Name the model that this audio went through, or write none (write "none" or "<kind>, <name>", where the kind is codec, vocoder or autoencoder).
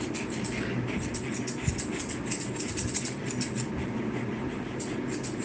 none